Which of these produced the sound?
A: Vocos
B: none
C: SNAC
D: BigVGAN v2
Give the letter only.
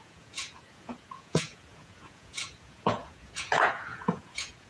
A